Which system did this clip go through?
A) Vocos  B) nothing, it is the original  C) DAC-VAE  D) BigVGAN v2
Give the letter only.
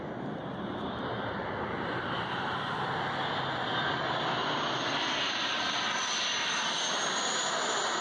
B